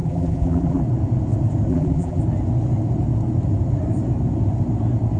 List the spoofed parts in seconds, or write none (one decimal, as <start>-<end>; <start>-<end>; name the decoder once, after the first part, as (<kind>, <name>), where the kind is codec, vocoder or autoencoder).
0.0-0.8 (vocoder, BigVGAN v2); 1.7-2.2